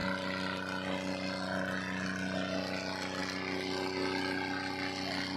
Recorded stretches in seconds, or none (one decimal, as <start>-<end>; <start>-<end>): 0.0-5.4